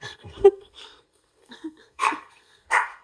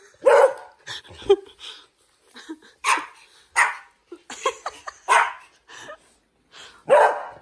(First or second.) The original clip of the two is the second